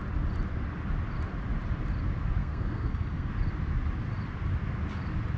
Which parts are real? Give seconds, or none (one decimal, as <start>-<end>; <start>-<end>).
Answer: 0.0-2.4; 3.3-5.4